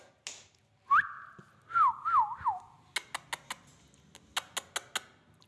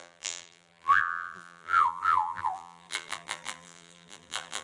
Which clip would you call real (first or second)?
first